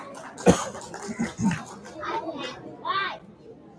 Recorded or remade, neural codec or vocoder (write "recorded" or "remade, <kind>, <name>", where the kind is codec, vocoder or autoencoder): recorded